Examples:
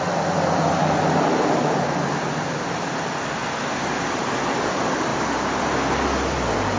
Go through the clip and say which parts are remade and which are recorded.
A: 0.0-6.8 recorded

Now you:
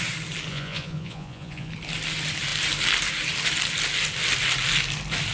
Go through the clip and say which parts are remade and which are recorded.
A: 0.0-0.5 recorded; 0.5-1.7 remade; 1.7-5.3 recorded

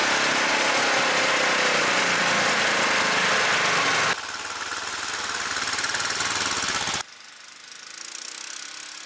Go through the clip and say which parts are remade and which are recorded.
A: 0.0-9.1 recorded

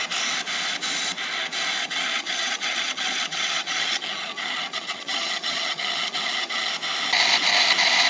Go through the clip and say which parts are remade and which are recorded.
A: 0.0-1.8 recorded; 1.8-6.7 remade; 6.7-8.1 recorded

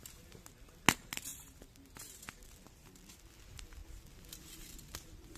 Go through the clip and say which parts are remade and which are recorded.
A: 0.0-5.4 recorded